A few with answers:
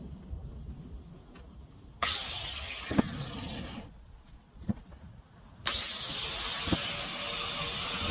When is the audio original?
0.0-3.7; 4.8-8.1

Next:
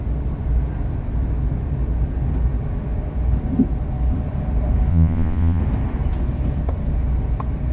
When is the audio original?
0.0-4.9; 5.6-7.7

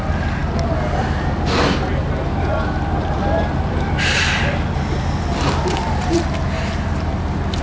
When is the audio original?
0.0-7.6

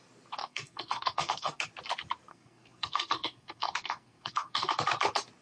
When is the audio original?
0.0-0.4; 1.6-2.3; 4.7-5.4

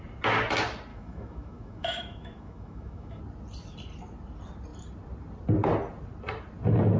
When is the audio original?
0.0-0.9; 3.2-7.0